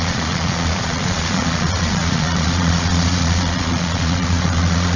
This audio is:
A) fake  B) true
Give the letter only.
A